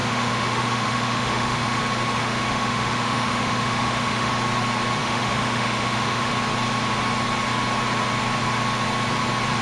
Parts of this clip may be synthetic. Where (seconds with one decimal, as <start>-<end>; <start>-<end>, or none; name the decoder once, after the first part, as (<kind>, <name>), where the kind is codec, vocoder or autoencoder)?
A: 0.0-1.8 (autoencoder, DAC-VAE); 2.2-4.3; 5.0-6.3